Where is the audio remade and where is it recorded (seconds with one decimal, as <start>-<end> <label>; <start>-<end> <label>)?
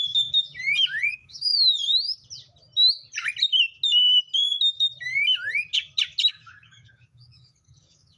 0.0-0.5 remade; 0.5-1.1 recorded; 1.1-1.5 remade; 1.5-6.3 recorded; 6.3-8.2 remade